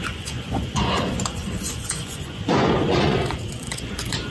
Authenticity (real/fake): fake